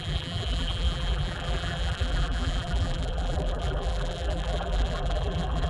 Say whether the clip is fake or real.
fake